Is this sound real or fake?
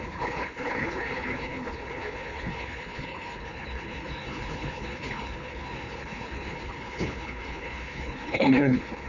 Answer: fake